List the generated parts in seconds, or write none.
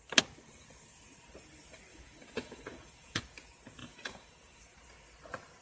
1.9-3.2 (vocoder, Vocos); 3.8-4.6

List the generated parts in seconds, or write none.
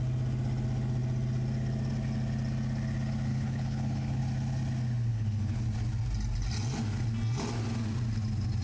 3.3-4.2 (codec, HILCodec); 5.1-5.6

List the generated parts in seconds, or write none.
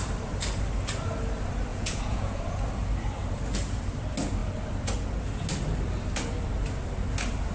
1.7-2.4 (vocoder, Vocos)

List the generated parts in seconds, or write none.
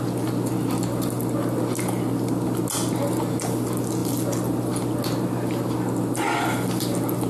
none